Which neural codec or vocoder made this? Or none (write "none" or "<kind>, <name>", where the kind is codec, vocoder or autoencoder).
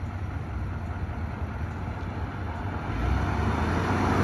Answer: none